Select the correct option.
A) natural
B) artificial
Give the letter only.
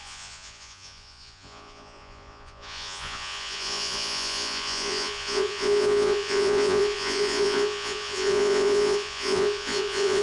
B